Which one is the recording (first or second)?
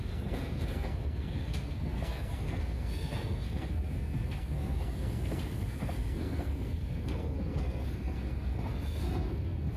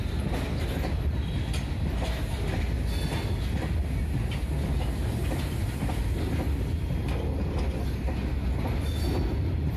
second